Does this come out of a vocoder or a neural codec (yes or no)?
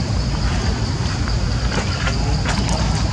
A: no